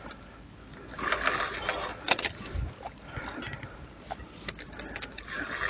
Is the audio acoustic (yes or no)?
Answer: yes